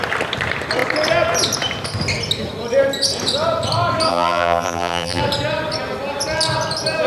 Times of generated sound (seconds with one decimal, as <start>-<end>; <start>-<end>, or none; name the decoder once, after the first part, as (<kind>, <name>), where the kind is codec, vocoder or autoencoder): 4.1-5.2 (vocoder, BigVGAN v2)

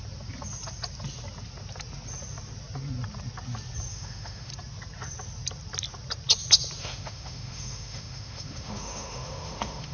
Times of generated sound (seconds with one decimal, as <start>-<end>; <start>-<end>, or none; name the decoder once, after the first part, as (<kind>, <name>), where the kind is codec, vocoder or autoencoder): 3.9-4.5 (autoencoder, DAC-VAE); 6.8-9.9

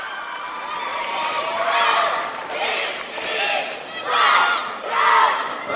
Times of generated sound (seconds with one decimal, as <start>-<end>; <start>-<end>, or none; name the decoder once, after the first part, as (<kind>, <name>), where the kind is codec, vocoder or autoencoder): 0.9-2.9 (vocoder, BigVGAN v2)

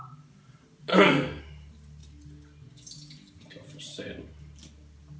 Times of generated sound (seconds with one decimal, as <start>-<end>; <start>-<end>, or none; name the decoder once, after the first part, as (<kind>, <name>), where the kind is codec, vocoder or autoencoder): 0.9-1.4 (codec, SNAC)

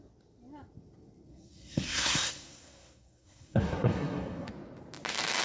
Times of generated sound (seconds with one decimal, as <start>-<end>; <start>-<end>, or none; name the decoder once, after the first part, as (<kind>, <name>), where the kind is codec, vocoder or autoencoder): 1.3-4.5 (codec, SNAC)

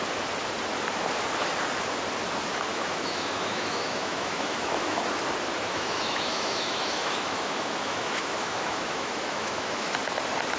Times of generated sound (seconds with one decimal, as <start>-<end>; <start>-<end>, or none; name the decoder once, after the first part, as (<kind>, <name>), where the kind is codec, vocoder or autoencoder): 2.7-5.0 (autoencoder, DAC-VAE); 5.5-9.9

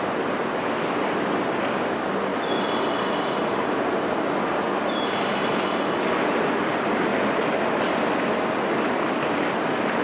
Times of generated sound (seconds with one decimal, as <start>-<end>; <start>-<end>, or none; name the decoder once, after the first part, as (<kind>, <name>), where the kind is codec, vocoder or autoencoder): none